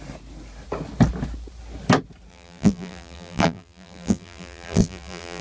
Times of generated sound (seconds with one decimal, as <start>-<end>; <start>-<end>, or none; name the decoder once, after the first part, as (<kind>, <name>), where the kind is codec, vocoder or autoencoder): 2.3-5.4 (vocoder, BigVGAN v2)